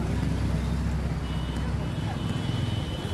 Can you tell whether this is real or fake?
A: real